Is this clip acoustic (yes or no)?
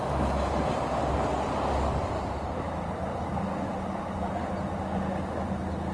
yes